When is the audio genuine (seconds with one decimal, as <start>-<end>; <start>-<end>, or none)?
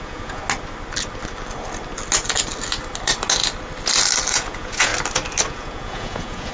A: 0.4-4.3; 4.9-5.5